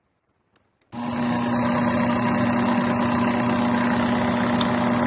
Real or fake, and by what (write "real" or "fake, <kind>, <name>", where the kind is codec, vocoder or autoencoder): real